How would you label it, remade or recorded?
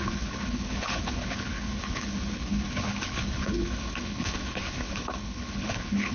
remade